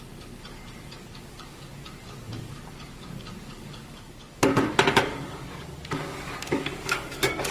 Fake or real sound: fake